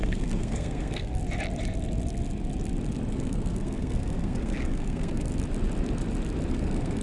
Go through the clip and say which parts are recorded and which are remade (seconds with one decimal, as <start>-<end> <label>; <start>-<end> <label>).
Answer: 0.0-1.2 remade; 1.2-3.1 recorded; 3.1-5.3 remade; 5.3-6.5 recorded; 6.5-7.0 remade